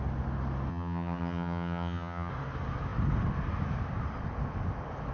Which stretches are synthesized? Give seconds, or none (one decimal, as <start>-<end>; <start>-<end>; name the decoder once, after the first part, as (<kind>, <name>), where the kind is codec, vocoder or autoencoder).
0.7-2.3 (vocoder, HiFi-GAN)